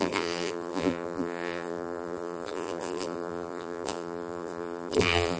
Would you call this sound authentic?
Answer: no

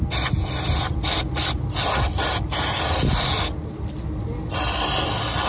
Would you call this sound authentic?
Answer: yes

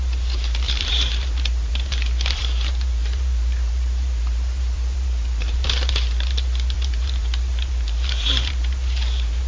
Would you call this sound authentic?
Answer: no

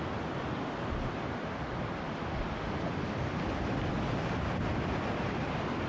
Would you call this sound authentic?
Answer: yes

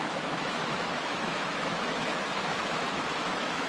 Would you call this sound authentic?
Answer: no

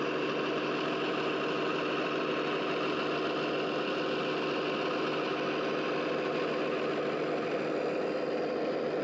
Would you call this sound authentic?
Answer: yes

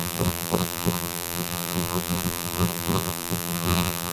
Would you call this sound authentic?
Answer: no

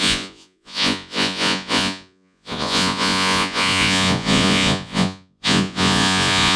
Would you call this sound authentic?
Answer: no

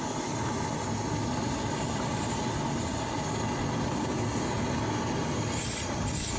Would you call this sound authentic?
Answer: yes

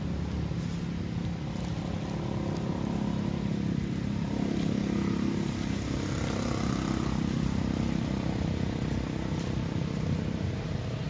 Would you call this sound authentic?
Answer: yes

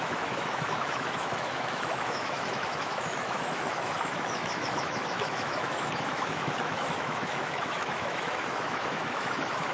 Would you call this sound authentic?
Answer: no